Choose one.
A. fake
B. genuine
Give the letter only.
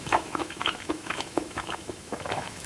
A